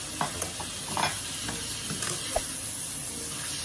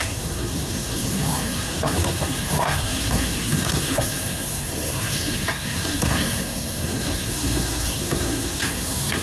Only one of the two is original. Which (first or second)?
first